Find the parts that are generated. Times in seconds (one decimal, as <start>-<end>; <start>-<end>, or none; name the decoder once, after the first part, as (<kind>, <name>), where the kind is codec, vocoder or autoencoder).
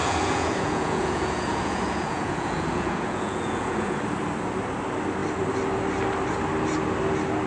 0.0-4.0 (vocoder, Vocos)